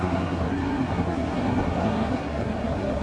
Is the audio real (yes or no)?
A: no